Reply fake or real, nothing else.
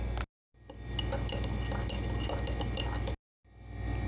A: real